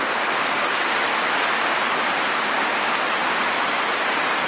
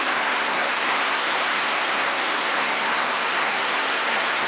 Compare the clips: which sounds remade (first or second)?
second